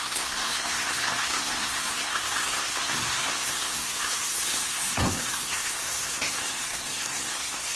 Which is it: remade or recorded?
remade